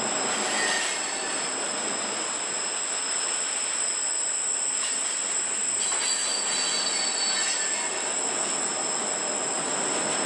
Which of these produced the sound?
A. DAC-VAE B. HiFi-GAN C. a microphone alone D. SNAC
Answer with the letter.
C